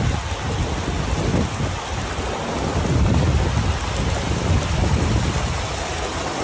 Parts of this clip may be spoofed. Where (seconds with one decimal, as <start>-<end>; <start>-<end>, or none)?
none